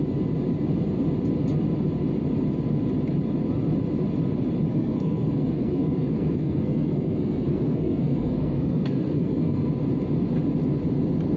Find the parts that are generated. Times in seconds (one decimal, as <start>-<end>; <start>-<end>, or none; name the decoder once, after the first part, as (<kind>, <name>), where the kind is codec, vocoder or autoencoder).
4.7-9.7 (codec, SNAC)